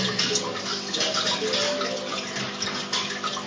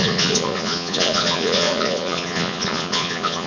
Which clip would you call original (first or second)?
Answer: first